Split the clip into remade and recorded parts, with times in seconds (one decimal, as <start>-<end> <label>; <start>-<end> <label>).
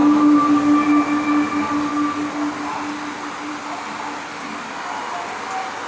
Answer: 0.0-5.9 recorded